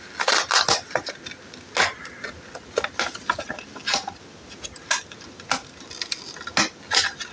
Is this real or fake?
real